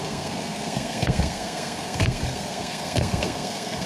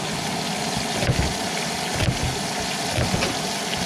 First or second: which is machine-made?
first